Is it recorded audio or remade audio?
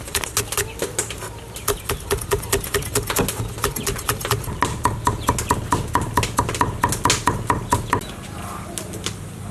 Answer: recorded